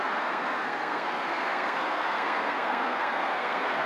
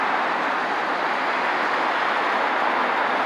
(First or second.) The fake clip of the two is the first